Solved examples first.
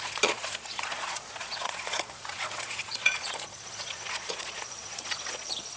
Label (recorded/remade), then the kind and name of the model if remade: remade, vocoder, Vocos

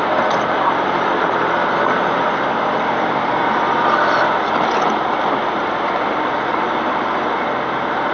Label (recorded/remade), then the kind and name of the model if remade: remade, vocoder, BigVGAN v2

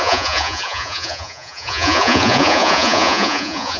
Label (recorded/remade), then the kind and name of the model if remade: remade, vocoder, Vocos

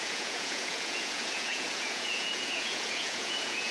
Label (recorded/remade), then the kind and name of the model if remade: remade, vocoder, Vocos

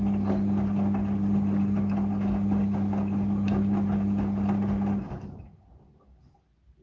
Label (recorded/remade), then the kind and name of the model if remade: recorded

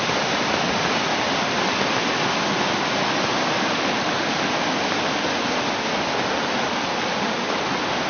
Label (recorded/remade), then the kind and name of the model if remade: recorded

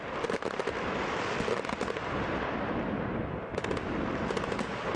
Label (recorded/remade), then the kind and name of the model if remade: recorded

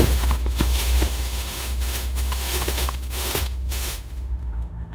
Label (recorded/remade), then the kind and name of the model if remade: remade, autoencoder, DAC-VAE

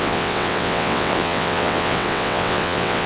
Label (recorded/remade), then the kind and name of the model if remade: remade, vocoder, WaveNeXt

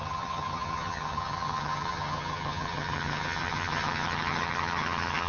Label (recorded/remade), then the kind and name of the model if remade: remade, vocoder, HiFi-GAN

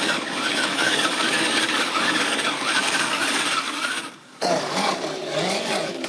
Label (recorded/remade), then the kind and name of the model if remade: remade, codec, DAC